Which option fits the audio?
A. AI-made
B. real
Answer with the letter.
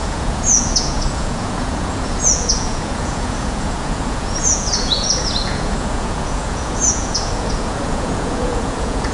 A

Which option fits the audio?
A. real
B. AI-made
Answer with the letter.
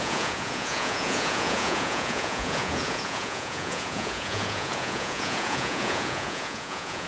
B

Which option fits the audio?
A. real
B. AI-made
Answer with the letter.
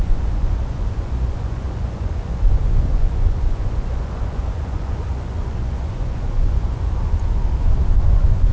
B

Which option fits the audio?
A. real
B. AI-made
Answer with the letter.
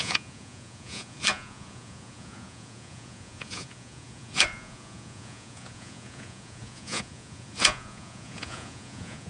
B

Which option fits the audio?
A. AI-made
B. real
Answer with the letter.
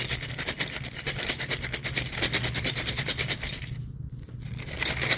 B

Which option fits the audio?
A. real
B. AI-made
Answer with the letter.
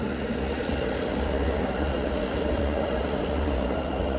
B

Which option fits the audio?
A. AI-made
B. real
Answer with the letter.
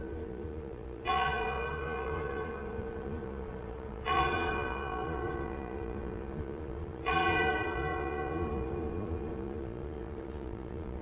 A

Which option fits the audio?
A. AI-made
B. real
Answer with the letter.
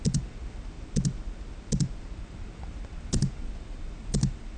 B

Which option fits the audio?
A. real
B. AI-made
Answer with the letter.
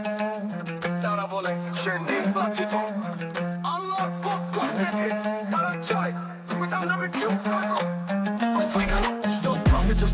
A